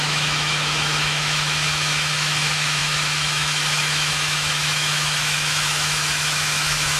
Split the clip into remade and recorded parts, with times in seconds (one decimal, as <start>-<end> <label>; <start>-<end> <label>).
0.0-7.0 remade